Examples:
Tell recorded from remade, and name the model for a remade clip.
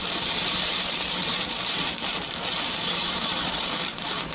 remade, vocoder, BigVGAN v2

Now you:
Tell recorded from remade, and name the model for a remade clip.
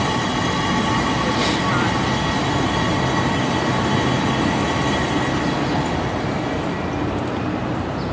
recorded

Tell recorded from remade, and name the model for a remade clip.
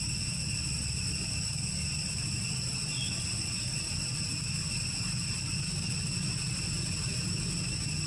remade, vocoder, BigVGAN v2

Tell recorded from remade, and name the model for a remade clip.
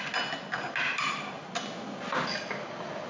recorded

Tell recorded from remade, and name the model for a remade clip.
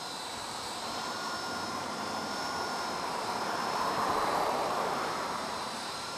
remade, vocoder, BigVGAN v2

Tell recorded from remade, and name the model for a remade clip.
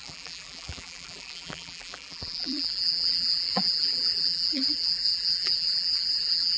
remade, vocoder, BigVGAN v2